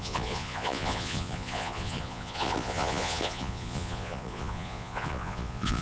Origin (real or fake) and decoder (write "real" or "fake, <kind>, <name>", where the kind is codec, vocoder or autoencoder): fake, vocoder, Vocos